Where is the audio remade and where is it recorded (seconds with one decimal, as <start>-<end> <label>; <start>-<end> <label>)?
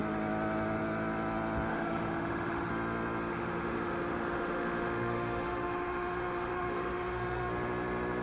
0.0-1.7 recorded; 1.7-2.7 remade; 2.7-3.3 recorded; 3.3-7.5 remade; 7.5-8.2 recorded